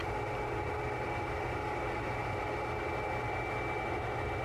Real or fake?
real